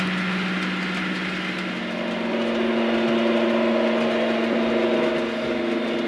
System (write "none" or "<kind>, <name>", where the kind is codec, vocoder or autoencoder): none